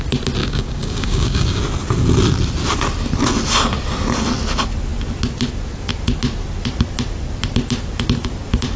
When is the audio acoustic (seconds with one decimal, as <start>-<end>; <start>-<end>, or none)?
0.0-0.4; 1.6-8.8